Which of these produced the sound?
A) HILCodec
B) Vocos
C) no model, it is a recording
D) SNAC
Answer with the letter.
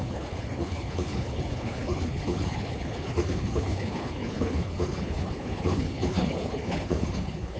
A